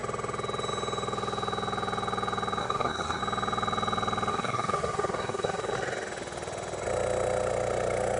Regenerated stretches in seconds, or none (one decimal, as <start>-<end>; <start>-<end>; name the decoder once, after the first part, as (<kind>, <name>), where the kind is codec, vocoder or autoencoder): 2.6-3.2 (codec, SNAC); 4.3-5.7